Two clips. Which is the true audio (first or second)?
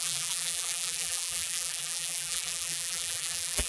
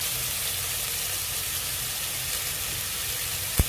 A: second